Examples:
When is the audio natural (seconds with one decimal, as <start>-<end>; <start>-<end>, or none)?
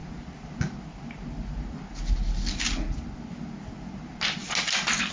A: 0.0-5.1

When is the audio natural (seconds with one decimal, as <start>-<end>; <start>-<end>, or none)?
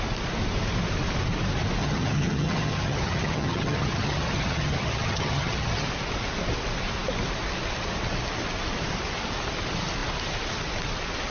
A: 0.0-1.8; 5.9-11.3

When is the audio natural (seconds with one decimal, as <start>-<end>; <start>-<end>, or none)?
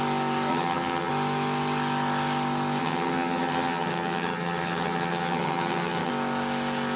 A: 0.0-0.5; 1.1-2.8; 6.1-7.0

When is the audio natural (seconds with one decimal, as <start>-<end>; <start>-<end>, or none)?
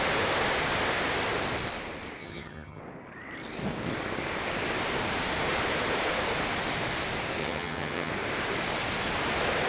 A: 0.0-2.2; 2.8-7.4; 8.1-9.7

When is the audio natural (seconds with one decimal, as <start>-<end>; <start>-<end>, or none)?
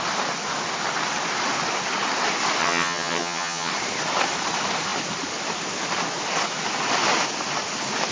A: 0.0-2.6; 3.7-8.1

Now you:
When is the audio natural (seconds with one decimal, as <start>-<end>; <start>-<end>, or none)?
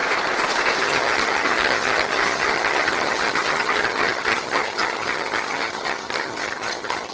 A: 0.0-0.8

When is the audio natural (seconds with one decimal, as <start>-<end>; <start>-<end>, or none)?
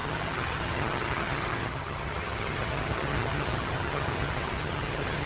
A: none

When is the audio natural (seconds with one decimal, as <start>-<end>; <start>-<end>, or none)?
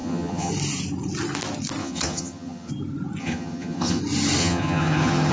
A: 0.5-1.8; 2.7-3.2; 4.0-4.4